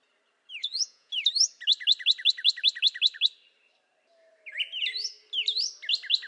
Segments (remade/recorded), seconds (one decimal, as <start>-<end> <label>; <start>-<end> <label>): 0.0-0.6 recorded; 0.6-1.1 remade; 1.1-6.3 recorded